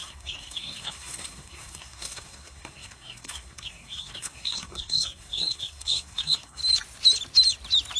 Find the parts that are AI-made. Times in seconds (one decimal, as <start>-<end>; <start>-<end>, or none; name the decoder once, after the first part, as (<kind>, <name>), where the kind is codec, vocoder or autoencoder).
0.0-6.6 (codec, SNAC)